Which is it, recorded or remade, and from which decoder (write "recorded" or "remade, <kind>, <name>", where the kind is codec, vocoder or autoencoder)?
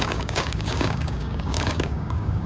remade, codec, DAC